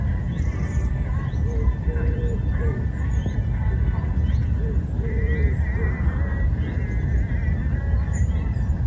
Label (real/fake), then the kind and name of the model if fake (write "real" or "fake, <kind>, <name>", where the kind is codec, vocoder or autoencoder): real